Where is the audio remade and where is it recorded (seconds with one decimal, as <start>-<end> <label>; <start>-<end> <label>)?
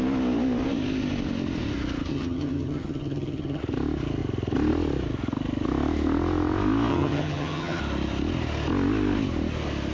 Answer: 0.0-2.1 recorded; 2.1-3.6 remade; 3.6-6.9 recorded; 6.9-7.8 remade; 7.8-9.9 recorded